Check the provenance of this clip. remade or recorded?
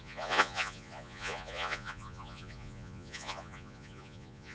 remade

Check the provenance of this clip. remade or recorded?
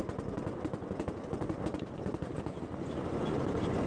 remade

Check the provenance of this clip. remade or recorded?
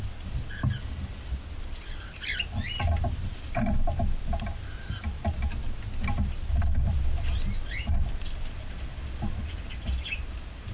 recorded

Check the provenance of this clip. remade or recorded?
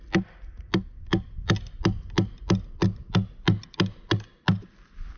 recorded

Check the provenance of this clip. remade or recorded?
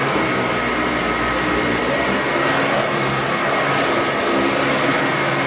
recorded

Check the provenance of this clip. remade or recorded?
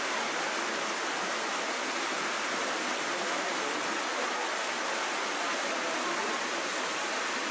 recorded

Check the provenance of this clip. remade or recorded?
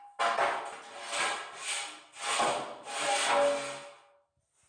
recorded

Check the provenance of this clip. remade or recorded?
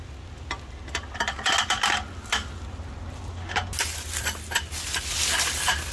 recorded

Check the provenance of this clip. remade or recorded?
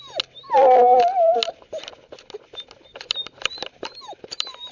recorded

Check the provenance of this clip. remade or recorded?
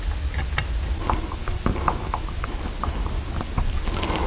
recorded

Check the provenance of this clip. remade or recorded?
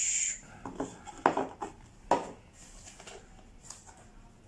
recorded